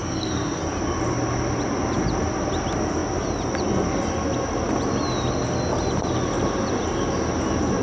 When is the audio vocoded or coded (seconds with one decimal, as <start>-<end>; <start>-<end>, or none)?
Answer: 0.0-0.6